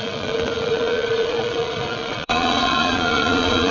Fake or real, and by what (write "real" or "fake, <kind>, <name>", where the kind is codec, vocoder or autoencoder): fake, vocoder, Vocos